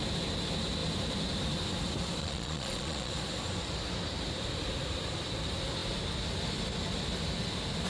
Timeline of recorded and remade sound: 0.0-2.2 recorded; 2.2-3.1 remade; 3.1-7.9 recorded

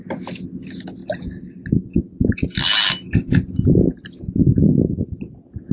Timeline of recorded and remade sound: 0.0-5.7 recorded

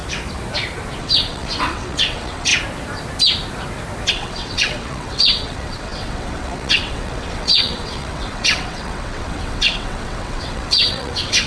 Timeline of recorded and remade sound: 0.0-1.0 recorded; 1.0-2.5 remade; 2.5-4.1 recorded; 4.1-11.5 remade

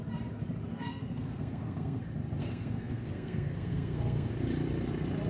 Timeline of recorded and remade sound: 0.0-0.7 recorded; 0.7-2.0 remade; 2.0-2.4 recorded; 2.4-4.3 remade; 4.3-5.3 recorded

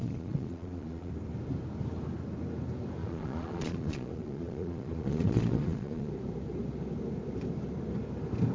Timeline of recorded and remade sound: 0.0-1.1 remade; 1.1-3.0 recorded; 3.0-6.1 remade; 6.1-8.5 recorded

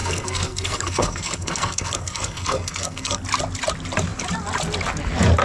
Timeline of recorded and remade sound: 0.0-3.2 remade; 3.2-5.4 recorded

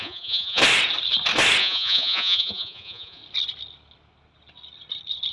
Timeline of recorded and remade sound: 0.0-0.6 remade; 0.6-1.6 recorded; 1.6-3.2 remade; 3.2-5.3 recorded